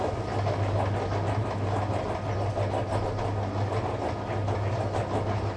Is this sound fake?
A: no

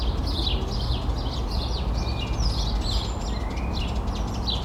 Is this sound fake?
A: no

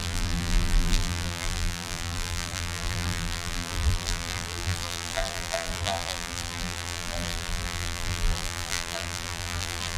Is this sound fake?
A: yes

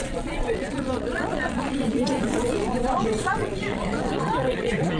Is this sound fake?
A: yes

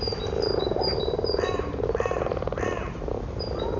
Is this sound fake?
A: no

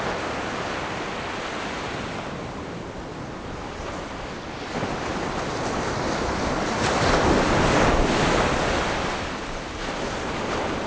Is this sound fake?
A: no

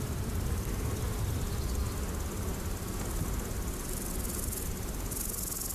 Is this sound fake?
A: no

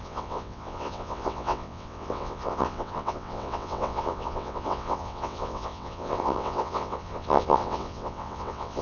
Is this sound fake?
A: yes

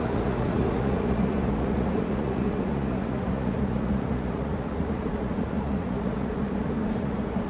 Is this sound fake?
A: yes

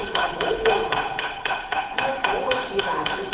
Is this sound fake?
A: yes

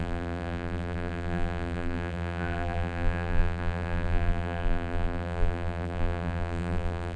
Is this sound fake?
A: yes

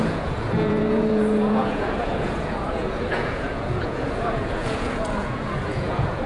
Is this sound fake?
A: yes